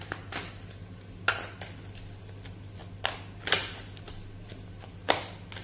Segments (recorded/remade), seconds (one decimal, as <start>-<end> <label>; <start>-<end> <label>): 0.0-5.6 recorded